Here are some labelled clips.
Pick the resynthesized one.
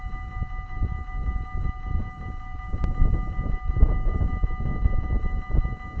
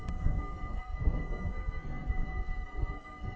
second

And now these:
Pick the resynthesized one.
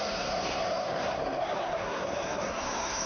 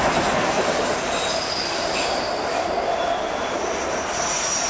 first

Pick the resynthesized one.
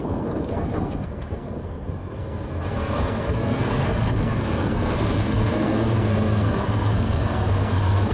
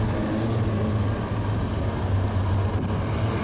first